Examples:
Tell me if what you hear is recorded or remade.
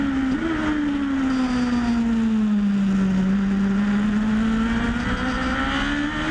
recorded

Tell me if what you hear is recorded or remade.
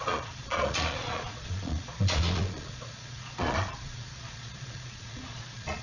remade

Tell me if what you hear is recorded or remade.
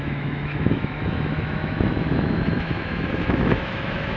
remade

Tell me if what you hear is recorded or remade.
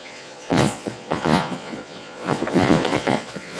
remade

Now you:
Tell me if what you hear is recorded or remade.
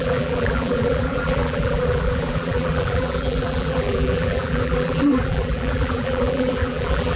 remade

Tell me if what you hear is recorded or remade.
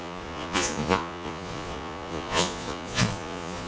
remade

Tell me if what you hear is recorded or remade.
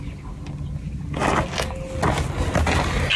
recorded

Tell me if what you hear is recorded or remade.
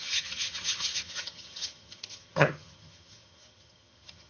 remade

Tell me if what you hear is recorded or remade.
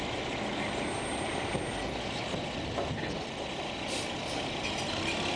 recorded